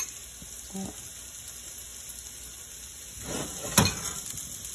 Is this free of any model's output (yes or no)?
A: yes